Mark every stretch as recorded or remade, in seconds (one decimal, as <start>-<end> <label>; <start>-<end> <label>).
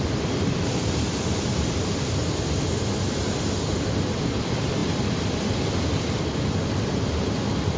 0.0-7.8 recorded